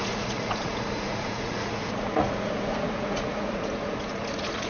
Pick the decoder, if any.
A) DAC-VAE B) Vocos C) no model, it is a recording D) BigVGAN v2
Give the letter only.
B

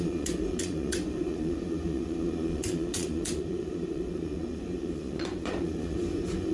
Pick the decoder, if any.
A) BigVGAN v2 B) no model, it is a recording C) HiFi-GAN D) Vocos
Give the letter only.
D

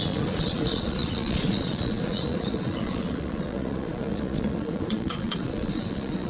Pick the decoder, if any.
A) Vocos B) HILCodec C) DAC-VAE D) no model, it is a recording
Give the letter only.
A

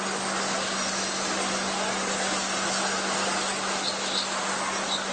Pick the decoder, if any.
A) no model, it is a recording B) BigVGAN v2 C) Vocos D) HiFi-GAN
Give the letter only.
A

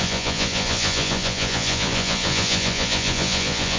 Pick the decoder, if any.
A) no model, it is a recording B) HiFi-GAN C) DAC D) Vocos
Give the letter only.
D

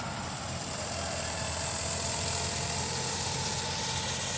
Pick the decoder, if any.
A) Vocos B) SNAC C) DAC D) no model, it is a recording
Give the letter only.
D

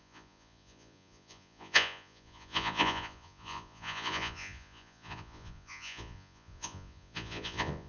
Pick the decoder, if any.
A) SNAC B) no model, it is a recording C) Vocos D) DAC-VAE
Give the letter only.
C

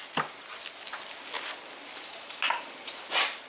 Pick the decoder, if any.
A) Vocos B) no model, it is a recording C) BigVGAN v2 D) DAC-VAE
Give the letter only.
B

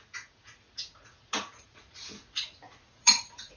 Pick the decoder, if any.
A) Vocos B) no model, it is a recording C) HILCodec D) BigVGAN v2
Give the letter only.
A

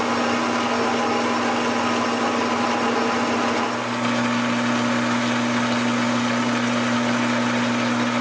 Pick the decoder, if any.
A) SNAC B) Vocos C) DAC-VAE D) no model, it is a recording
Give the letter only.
D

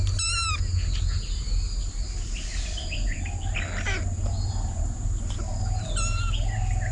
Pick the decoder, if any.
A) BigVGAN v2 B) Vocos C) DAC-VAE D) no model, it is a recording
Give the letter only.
D